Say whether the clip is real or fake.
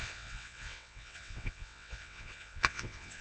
fake